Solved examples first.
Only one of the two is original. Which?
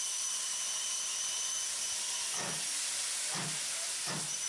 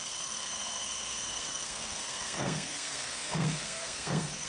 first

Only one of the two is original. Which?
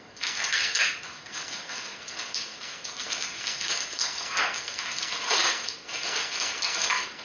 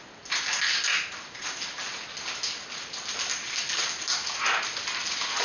second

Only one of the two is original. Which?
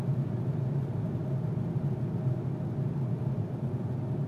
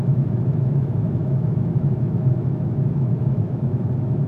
first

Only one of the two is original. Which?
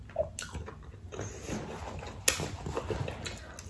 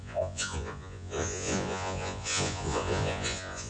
first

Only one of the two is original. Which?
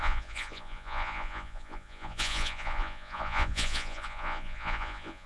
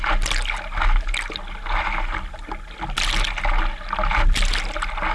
second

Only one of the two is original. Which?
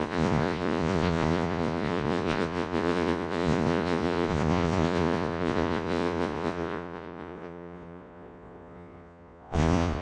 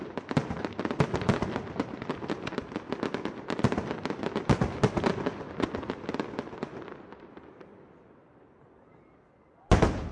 second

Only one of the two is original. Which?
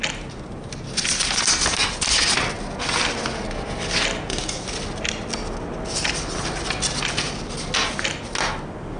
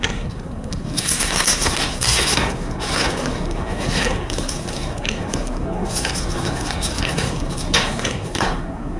first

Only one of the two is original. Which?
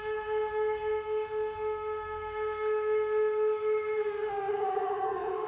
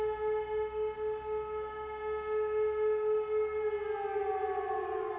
second